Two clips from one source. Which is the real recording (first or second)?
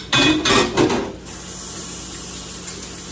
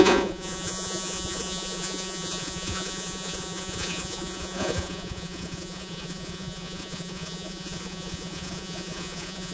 first